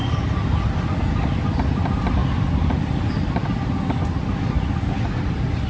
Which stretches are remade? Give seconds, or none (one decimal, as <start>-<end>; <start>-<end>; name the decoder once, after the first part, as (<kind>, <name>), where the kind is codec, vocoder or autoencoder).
none

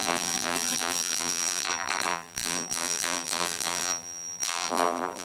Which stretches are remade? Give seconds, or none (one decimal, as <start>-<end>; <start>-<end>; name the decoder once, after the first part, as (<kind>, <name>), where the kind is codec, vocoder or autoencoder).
0.0-5.2 (vocoder, BigVGAN v2)